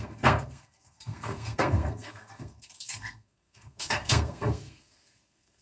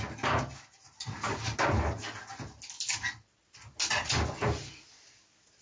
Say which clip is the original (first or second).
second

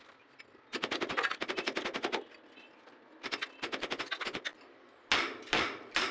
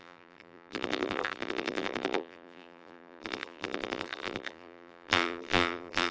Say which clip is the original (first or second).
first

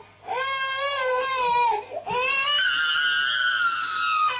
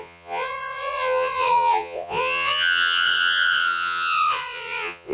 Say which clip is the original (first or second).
first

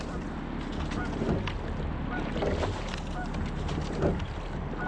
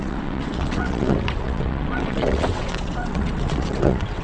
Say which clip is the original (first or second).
first